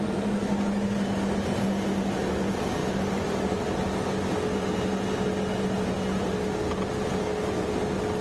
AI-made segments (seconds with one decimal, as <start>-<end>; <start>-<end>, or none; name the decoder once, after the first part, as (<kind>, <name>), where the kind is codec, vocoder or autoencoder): none